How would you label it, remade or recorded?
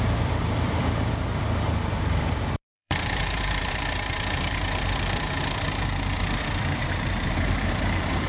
remade